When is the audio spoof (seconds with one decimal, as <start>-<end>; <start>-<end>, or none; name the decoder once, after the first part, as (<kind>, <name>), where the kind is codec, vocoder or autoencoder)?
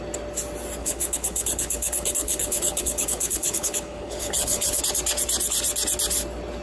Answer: 0.8-4.8 (codec, HILCodec)